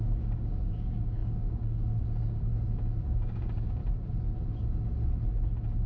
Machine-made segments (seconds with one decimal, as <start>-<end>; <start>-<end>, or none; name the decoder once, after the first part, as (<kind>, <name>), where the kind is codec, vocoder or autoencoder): 0.0-2.5 (codec, DAC); 3.0-3.8